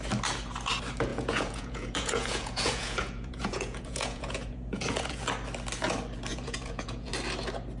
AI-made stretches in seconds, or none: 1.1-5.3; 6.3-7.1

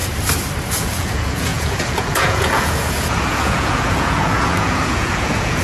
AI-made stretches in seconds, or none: 0.7-5.6

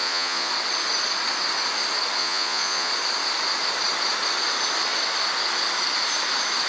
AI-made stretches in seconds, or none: 0.0-0.5; 2.2-2.9

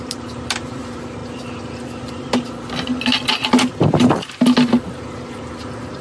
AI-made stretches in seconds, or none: none

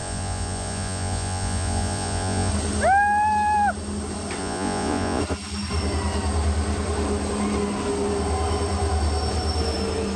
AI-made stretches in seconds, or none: 0.0-2.5; 4.4-5.2

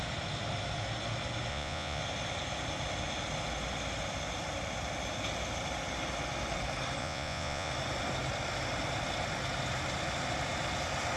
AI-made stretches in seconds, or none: 1.5-2.0; 7.0-7.7

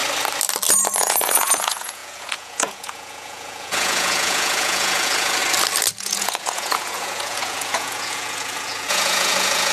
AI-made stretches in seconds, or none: 1.0-5.4; 6.0-9.7